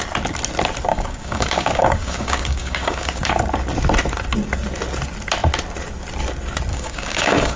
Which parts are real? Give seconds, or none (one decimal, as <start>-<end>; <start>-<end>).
0.0-0.9; 3.3-6.7